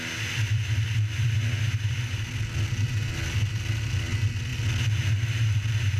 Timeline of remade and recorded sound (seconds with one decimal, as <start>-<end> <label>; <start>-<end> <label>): 0.0-6.0 recorded